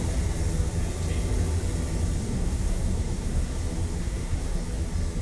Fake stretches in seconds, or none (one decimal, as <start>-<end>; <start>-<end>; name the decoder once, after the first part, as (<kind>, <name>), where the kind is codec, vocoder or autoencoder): 2.2-3.6 (codec, SNAC); 4.0-4.6